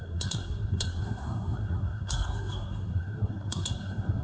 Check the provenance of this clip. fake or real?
fake